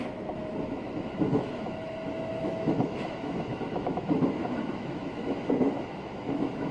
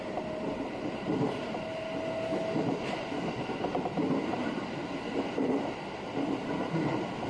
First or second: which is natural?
second